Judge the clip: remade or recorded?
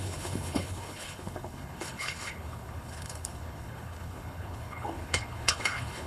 remade